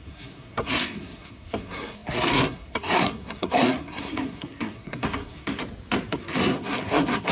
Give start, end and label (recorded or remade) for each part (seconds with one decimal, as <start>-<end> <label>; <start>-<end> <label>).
0.0-5.6 remade; 5.6-6.1 recorded; 6.1-7.3 remade